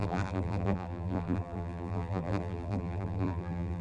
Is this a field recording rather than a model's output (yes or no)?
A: no